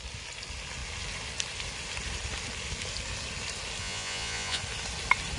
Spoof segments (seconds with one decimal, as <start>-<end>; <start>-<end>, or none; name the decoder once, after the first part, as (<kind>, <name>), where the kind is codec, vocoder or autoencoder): 3.8-4.6 (vocoder, Vocos)